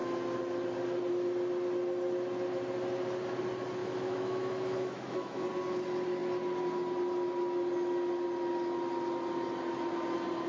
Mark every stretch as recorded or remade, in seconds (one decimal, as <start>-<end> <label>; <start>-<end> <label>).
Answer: 0.0-3.8 recorded; 3.8-5.5 remade; 5.5-10.5 recorded